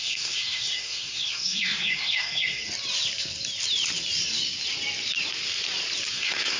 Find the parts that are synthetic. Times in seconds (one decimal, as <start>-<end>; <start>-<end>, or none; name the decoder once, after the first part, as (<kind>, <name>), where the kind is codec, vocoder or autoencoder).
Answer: 0.0-2.6 (codec, SNAC); 6.1-6.6